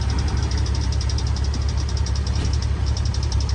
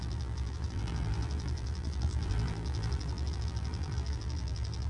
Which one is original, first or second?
first